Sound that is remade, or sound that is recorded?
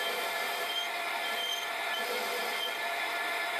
recorded